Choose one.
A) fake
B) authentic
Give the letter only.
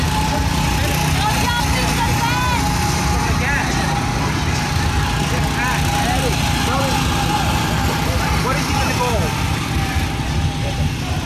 B